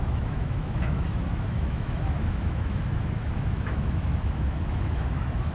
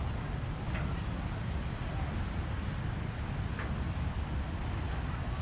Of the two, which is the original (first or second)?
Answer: second